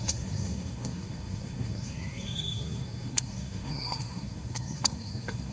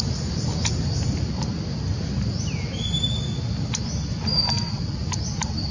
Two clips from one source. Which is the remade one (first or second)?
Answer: first